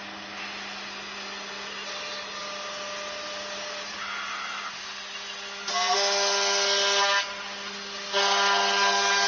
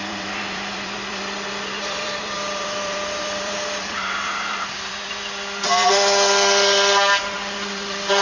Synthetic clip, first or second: second